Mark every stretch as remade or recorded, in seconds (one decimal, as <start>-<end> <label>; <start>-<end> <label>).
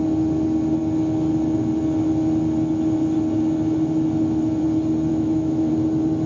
0.0-5.1 recorded; 5.1-5.7 remade; 5.7-6.3 recorded